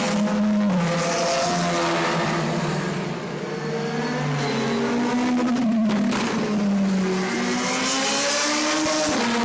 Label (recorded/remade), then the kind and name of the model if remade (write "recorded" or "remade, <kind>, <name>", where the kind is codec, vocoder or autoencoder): recorded